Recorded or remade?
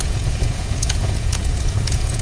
remade